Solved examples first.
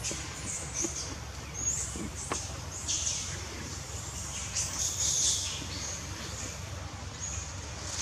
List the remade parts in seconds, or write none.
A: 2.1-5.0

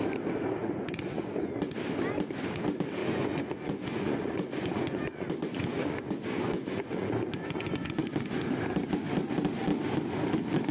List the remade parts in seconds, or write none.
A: 0.6-1.3; 3.0-7.9

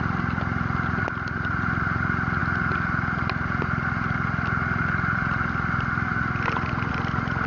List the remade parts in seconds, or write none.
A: none

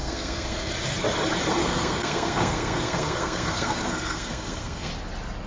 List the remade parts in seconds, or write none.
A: 0.0-0.7; 1.6-4.9

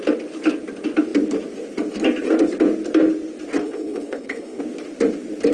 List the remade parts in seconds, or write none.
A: 3.6-4.6

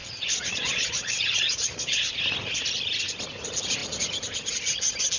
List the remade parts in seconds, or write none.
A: 0.0-2.2

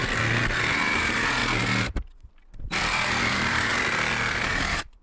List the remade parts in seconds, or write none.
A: 0.7-1.4; 3.3-3.7; 4.4-5.0

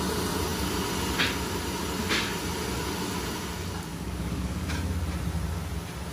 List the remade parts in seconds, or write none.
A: 3.9-4.7